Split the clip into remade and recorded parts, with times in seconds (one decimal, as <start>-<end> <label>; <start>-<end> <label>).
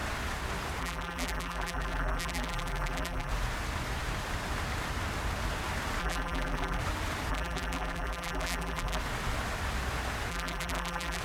0.0-0.8 recorded; 0.8-3.3 remade; 3.3-6.0 recorded; 6.0-6.8 remade; 6.8-7.3 recorded; 7.3-9.0 remade; 9.0-10.3 recorded; 10.3-11.2 remade